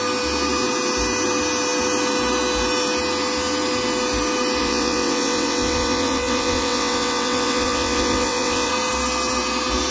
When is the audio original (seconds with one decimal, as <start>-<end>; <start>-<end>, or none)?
0.0-4.6; 8.7-9.9